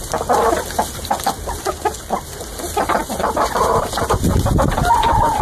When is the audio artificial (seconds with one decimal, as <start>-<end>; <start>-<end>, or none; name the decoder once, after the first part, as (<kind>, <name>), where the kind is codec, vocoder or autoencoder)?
none